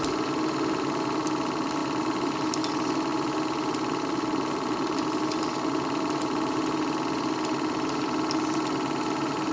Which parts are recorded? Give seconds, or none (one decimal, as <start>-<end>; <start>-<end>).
0.0-9.5